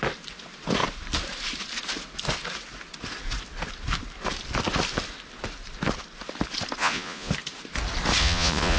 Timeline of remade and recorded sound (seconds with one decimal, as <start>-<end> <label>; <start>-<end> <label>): 0.0-6.8 recorded; 6.8-7.3 remade; 7.3-8.2 recorded; 8.2-8.8 remade